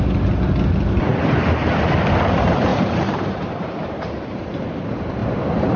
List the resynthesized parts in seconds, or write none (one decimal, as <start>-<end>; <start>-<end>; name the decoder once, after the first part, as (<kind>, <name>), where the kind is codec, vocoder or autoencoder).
2.7-4.0 (vocoder, BigVGAN v2); 5.2-5.8